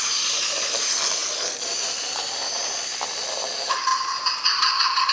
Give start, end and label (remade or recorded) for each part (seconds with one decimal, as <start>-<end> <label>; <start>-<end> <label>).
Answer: 0.0-1.2 remade; 1.2-3.2 recorded; 3.2-3.9 remade; 3.9-5.1 recorded